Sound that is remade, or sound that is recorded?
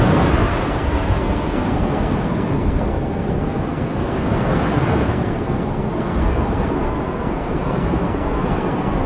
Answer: remade